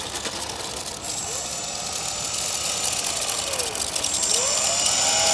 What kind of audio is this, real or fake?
real